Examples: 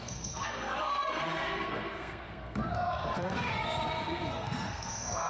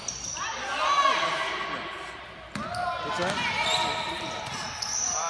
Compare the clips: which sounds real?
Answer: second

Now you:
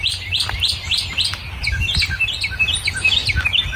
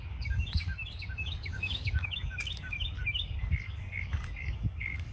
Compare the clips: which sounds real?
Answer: first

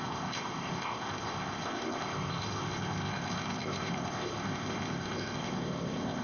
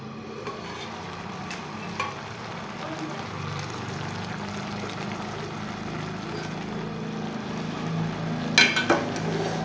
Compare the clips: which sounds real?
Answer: second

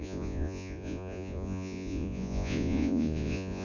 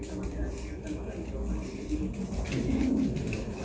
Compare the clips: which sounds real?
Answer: second